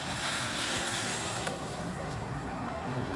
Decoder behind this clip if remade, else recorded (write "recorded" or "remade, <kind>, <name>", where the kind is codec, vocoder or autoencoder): remade, codec, SNAC